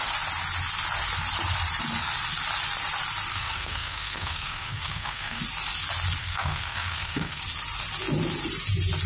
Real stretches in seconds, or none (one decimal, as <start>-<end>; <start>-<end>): 0.0-3.3; 5.4-6.2; 7.4-9.1